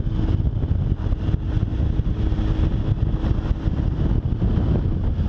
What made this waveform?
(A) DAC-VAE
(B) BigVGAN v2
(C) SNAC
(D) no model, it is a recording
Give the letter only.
D